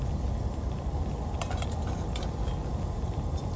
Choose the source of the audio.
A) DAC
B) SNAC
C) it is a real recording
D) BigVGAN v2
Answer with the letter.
C